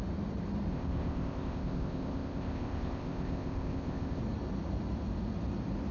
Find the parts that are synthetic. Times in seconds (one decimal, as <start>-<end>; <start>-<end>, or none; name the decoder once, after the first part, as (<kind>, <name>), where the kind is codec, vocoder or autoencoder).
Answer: 0.7-4.2 (codec, ZipCodec)